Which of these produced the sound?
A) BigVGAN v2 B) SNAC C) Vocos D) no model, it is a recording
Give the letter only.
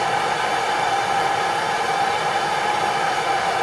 D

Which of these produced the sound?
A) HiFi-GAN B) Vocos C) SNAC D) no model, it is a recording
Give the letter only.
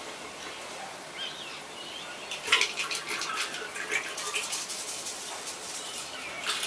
D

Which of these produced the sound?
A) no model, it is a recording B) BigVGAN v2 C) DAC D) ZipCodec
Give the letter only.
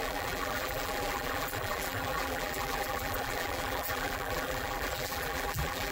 B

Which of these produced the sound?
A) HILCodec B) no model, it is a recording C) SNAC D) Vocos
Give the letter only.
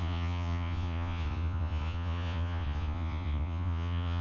D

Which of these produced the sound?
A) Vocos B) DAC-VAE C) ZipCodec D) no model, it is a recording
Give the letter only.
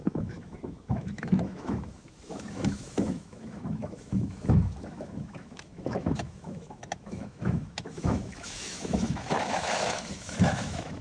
B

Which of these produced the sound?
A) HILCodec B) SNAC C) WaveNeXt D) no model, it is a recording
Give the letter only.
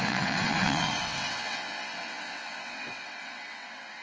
C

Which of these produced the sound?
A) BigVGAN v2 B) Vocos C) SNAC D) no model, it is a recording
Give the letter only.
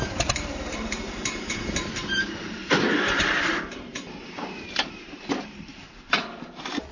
A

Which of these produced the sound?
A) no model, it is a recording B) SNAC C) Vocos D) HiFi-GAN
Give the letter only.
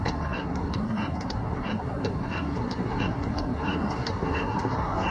B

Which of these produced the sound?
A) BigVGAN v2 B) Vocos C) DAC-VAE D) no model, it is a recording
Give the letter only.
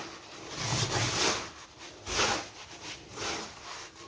D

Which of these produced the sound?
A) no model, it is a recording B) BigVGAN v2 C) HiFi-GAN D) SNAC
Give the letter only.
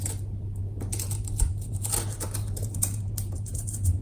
B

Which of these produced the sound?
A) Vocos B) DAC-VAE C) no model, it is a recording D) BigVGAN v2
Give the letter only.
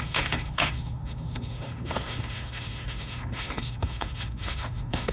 B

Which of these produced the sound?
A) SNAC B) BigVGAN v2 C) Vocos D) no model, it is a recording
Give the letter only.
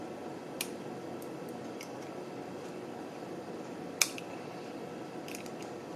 D